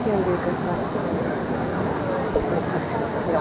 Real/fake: real